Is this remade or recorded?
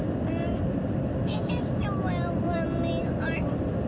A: remade